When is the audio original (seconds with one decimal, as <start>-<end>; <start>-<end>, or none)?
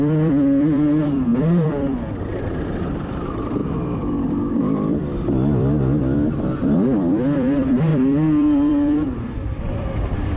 6.0-6.6